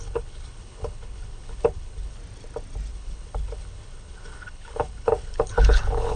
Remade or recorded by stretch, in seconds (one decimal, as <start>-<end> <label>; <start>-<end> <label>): 0.0-2.2 remade; 2.2-2.9 recorded; 2.9-6.2 remade

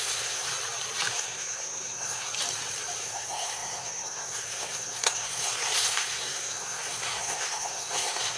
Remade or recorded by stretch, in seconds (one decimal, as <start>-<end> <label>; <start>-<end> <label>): 0.0-0.5 remade; 0.5-1.1 recorded; 1.1-2.3 remade; 2.3-3.0 recorded; 3.0-8.4 remade

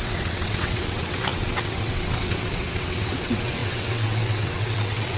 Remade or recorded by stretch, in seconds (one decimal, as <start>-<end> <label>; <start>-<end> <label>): 0.0-5.2 remade

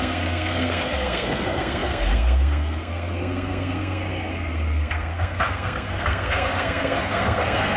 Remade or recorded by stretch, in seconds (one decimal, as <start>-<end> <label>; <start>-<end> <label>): 0.0-7.8 remade

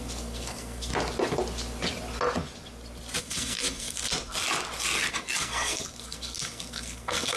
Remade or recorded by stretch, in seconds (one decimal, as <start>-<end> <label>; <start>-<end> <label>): 0.0-0.9 remade; 0.9-3.2 recorded; 3.2-4.1 remade; 4.1-5.1 recorded; 5.1-7.4 remade

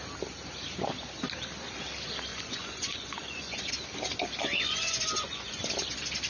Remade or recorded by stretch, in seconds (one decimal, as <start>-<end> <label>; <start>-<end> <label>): 0.0-2.3 recorded; 2.3-3.7 remade; 3.7-4.4 recorded; 4.4-5.7 remade; 5.7-6.3 recorded